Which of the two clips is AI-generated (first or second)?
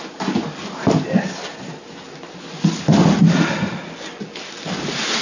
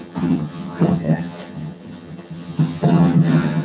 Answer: second